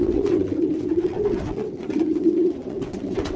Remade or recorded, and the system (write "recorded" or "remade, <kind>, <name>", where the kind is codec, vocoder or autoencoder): remade, vocoder, WaveNeXt